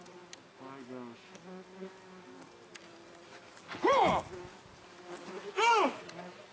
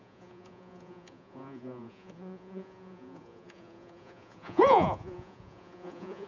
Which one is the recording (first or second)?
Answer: first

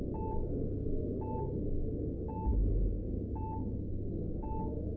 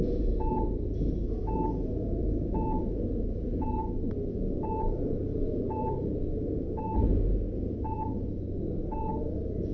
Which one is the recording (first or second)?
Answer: first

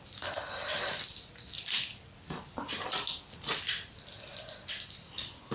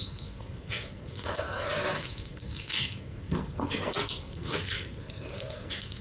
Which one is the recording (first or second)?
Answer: first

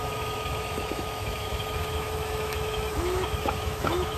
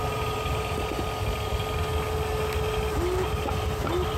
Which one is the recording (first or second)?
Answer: second